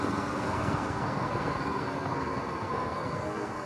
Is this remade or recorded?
remade